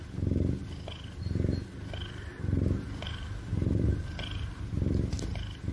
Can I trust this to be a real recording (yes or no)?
yes